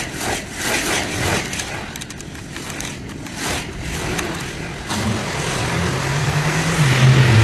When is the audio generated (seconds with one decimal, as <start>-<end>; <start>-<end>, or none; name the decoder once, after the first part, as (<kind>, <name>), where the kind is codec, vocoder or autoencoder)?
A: 6.2-6.7 (codec, SNAC)